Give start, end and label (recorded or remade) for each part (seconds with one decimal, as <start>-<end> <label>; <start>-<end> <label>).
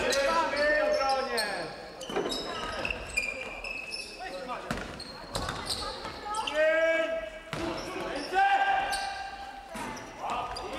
0.0-1.8 recorded; 1.8-5.9 remade; 5.9-10.8 recorded